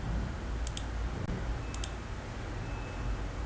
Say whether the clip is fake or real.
real